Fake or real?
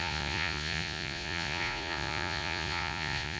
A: fake